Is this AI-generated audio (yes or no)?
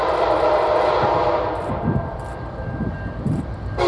yes